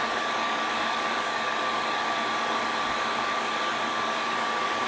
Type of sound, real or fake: fake